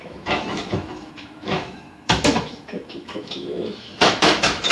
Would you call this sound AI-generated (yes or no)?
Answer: yes